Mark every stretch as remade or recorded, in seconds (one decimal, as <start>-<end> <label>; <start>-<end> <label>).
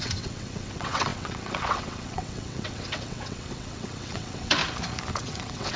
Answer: 0.0-4.6 remade; 4.6-5.1 recorded; 5.1-5.8 remade